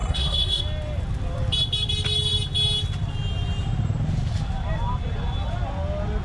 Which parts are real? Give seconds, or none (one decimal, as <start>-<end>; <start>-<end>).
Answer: 0.6-6.2